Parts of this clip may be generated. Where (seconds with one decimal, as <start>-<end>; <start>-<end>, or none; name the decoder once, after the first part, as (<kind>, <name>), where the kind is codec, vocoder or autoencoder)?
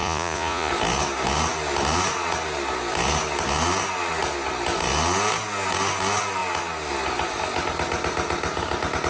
0.0-0.7 (vocoder, Vocos)